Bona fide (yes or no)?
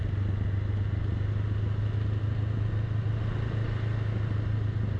yes